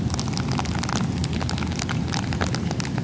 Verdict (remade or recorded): recorded